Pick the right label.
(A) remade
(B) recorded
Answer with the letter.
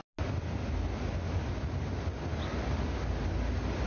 B